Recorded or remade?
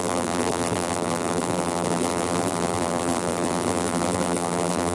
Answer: remade